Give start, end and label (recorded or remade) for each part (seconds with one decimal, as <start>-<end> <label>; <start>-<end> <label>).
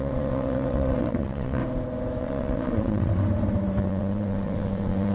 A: 0.0-1.6 remade; 1.6-2.2 recorded; 2.2-3.1 remade; 3.1-3.8 recorded; 3.8-5.1 remade